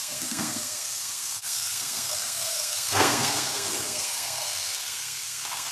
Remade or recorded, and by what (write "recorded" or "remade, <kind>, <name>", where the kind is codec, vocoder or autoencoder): remade, codec, SNAC